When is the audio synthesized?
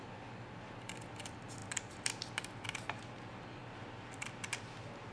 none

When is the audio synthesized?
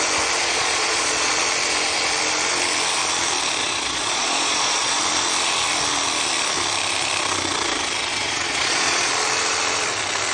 0.4-1.3 (vocoder, Vocos); 3.6-5.0; 8.1-9.1